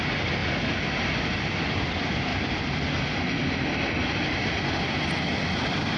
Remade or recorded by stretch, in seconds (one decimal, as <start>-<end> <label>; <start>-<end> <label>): 0.0-6.0 recorded